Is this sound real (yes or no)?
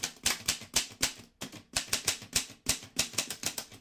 yes